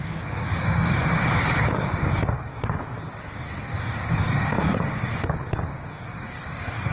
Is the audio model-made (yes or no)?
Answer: yes